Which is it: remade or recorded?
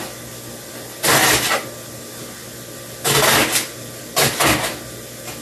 recorded